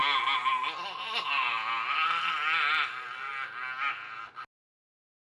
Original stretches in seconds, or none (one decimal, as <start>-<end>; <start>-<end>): 0.0-5.2